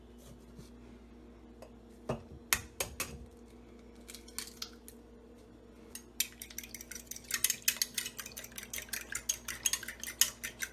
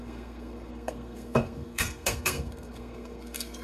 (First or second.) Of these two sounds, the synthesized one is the second